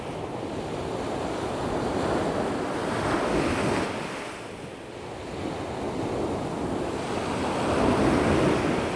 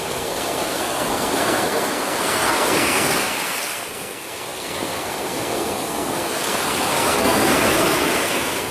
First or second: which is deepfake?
second